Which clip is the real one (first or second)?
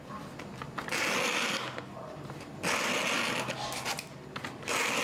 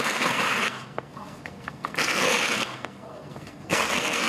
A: first